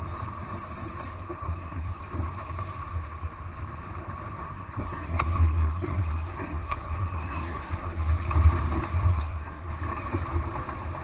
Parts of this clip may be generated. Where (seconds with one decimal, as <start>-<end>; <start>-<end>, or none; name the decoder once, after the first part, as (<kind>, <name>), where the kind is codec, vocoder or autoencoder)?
1.4-2.0 (codec, SNAC); 4.4-8.1; 9.1-9.7